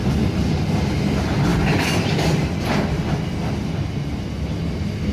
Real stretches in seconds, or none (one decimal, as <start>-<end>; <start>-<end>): 0.0-5.1